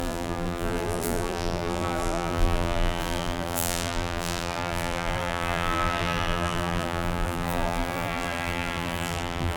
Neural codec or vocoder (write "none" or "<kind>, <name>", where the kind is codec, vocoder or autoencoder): vocoder, BigVGAN v2